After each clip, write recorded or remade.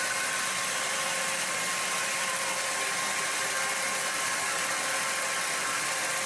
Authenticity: recorded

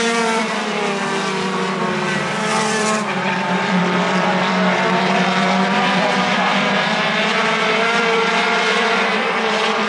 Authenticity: remade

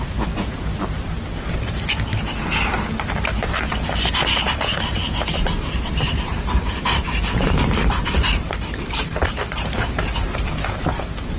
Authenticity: remade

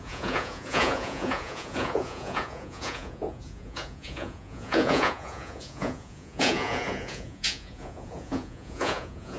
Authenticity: remade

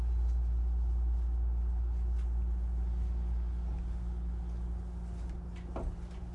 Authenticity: recorded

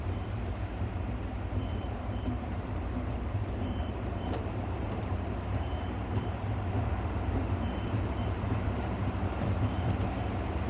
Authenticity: remade